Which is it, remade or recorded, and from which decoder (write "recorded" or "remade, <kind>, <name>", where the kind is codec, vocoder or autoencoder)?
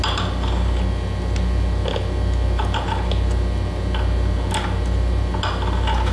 recorded